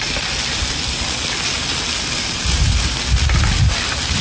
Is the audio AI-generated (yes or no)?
no